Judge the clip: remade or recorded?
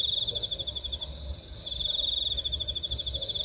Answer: recorded